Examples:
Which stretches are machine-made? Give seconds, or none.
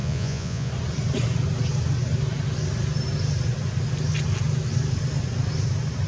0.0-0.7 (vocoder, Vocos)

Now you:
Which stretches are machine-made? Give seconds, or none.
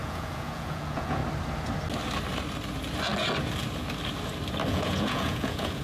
0.0-1.2 (vocoder, Vocos); 4.7-5.8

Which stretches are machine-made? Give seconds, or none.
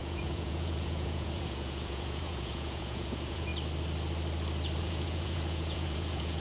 0.0-3.5 (vocoder, Vocos); 4.8-6.4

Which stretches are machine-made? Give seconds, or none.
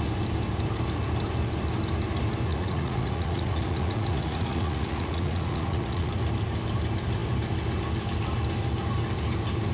2.5-6.1 (vocoder, Vocos)